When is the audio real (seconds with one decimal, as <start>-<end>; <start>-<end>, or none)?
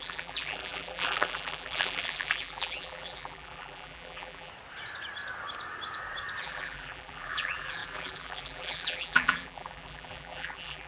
4.5-6.4